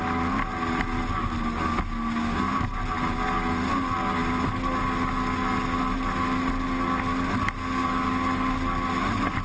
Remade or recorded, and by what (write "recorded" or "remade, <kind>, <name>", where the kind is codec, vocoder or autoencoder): recorded